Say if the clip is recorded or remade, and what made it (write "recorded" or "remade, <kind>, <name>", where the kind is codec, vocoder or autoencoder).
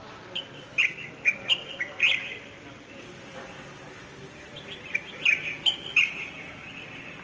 recorded